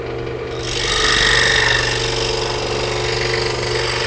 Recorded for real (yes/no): yes